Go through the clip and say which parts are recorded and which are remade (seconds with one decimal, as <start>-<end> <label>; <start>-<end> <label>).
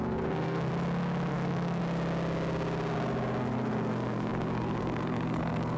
0.0-0.7 remade; 0.7-1.3 recorded; 1.3-1.8 remade; 1.8-3.4 recorded; 3.4-5.8 remade